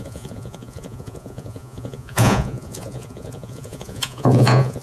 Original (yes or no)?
no